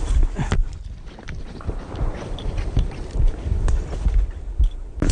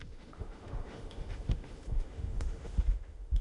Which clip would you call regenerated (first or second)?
second